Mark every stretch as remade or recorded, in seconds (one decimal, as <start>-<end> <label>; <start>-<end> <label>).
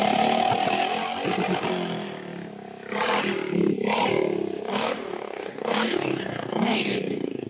0.0-4.7 recorded; 4.7-7.5 remade